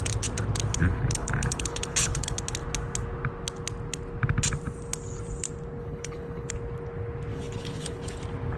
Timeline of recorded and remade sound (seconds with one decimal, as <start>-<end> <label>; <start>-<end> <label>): 0.0-0.8 recorded; 0.8-2.4 remade; 2.4-5.8 recorded; 5.8-6.5 remade; 6.5-7.3 recorded; 7.3-8.2 remade; 8.2-8.6 recorded